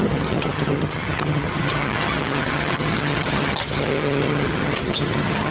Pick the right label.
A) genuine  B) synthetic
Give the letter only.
B